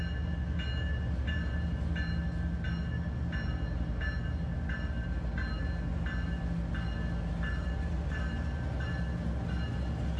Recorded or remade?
recorded